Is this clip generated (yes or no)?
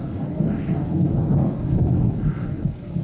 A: yes